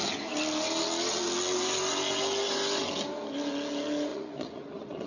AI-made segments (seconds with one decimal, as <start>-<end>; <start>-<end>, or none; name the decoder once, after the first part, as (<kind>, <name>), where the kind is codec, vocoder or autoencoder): 4.1-5.1 (vocoder, Vocos)